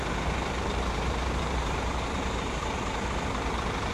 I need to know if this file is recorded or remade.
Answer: remade